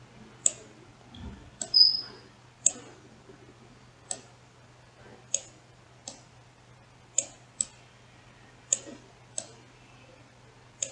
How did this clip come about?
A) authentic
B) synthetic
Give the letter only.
A